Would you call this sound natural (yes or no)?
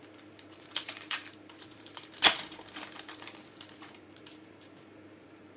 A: no